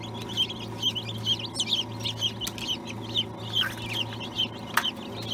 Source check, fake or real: real